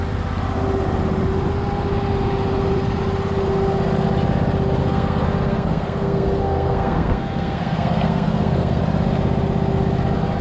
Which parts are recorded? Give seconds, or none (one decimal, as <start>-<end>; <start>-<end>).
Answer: 0.0-4.8; 8.8-10.4